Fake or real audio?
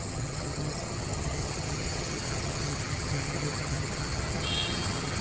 fake